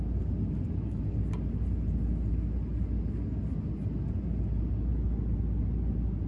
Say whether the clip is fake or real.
real